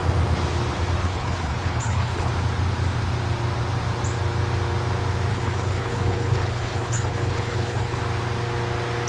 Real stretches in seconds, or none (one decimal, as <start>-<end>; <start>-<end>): 0.0-1.0; 2.3-5.3; 8.0-9.1